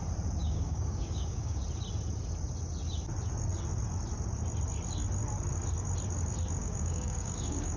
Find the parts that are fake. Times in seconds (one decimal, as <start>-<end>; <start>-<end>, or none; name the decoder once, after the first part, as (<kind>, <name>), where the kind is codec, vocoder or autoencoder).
0.4-1.6 (codec, DAC); 6.6-7.8